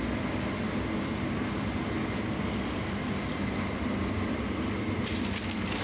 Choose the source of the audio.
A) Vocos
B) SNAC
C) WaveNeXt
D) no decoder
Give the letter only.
D